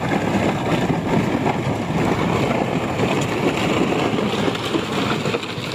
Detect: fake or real real